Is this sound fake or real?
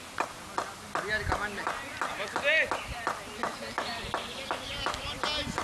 real